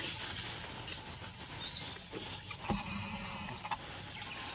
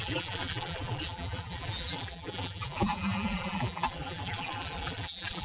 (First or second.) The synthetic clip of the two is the second